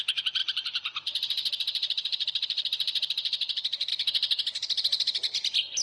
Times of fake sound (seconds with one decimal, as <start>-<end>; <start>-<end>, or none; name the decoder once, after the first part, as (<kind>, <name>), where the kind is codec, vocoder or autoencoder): 0.4-3.9 (vocoder, BigVGAN v2)